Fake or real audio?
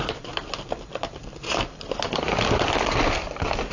real